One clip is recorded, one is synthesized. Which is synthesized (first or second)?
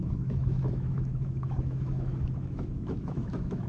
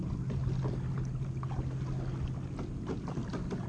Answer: first